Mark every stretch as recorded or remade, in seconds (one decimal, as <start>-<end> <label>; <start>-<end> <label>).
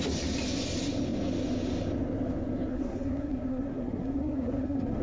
0.0-2.7 recorded; 2.7-5.0 remade